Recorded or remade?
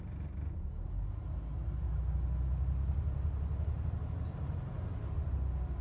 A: recorded